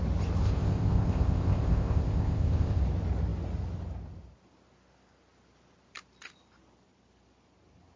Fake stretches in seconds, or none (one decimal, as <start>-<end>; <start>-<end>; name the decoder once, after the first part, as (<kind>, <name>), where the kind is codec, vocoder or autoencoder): 0.4-2.8 (codec, ZipCodec)